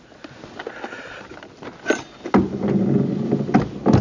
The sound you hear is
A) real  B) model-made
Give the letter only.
A